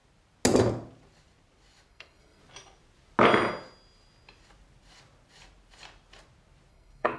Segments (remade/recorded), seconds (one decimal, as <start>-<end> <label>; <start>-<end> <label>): 0.0-1.9 recorded; 1.9-2.4 remade; 2.4-6.7 recorded; 6.7-7.2 remade